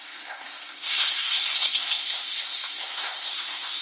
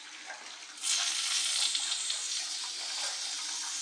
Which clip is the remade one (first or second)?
first